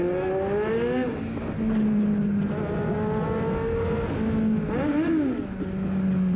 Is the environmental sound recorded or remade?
recorded